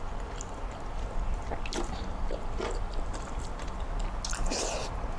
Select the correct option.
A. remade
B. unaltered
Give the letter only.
B